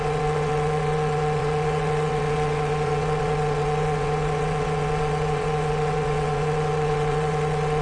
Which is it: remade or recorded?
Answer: remade